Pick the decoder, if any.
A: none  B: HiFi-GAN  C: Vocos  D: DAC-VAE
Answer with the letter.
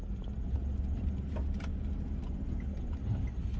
A